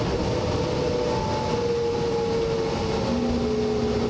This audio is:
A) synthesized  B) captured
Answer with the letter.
B